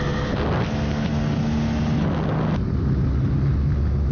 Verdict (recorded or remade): recorded